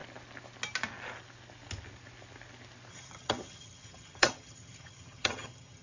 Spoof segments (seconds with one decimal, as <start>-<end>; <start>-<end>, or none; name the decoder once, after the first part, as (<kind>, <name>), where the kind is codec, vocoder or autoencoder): 2.9-5.8 (vocoder, HiFi-GAN)